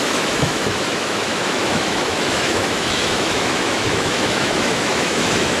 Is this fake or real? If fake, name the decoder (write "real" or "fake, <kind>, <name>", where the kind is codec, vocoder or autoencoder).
fake, autoencoder, DAC-VAE